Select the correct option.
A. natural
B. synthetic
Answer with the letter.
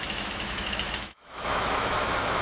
B